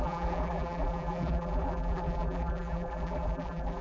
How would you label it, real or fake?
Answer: fake